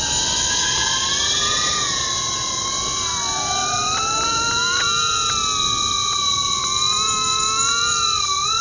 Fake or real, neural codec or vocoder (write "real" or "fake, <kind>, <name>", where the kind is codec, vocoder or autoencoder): real